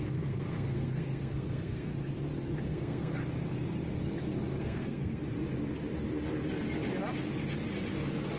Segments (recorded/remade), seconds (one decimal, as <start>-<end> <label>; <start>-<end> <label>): 0.0-1.9 remade; 1.9-2.6 recorded; 2.6-3.2 remade; 3.2-4.6 recorded; 4.6-5.2 remade; 5.2-8.4 recorded